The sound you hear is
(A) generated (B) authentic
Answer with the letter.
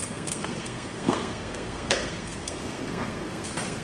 A